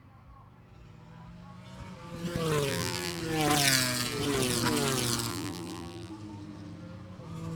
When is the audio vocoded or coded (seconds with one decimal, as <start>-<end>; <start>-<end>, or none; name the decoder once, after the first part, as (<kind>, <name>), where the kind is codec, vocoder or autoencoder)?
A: 2.7-3.2 (vocoder, BigVGAN v2); 5.3-6.1